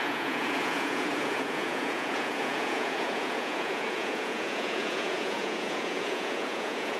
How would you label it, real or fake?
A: fake